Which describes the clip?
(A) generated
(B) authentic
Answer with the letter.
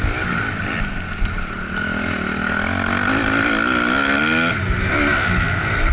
B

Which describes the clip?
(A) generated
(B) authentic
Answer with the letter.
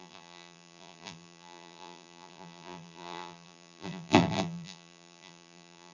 A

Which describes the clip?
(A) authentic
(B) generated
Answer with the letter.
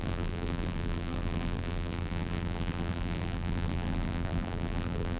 B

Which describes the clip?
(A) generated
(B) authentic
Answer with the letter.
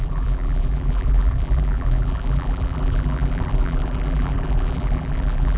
A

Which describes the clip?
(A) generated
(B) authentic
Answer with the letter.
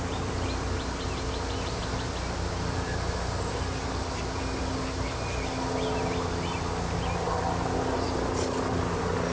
B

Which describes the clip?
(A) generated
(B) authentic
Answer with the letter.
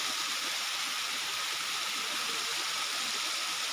A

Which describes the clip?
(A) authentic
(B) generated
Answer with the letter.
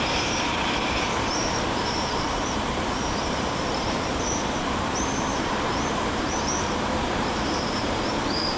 B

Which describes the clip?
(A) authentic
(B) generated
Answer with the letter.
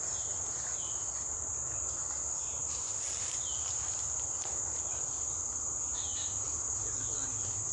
B